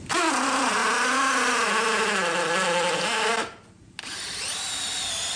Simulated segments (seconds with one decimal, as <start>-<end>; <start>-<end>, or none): none